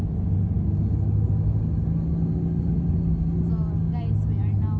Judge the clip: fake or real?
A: real